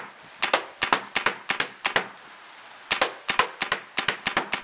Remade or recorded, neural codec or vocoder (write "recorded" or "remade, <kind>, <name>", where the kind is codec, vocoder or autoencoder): recorded